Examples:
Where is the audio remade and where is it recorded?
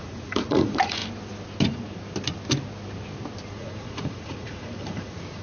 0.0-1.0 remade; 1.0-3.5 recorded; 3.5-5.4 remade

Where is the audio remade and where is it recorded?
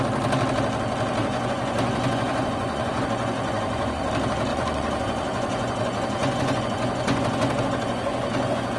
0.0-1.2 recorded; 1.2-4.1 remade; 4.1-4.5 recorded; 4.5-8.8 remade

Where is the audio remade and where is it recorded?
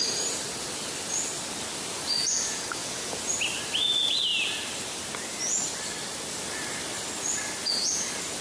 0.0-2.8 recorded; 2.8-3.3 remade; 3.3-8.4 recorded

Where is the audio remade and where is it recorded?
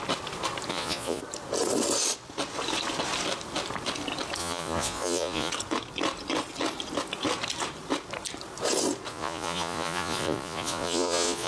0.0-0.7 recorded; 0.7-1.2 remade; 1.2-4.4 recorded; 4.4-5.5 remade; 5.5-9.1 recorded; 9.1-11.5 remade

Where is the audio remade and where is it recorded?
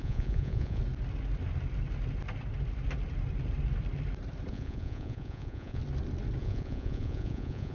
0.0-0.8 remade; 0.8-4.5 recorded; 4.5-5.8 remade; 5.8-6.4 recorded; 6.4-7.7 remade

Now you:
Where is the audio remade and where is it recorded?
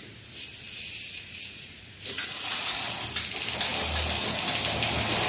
0.0-1.1 recorded; 1.1-2.8 remade; 2.8-5.3 recorded